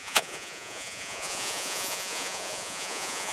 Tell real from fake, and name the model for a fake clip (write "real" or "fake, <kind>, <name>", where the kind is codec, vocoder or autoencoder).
fake, vocoder, Vocos